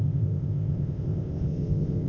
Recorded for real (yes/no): no